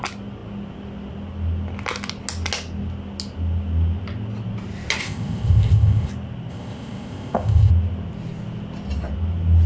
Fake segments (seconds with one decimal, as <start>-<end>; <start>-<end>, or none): 5.0-6.1; 6.5-7.7